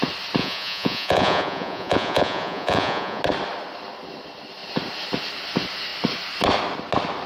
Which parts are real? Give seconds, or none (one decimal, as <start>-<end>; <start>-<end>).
0.0-0.4; 3.2-7.3